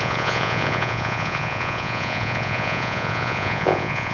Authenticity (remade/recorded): remade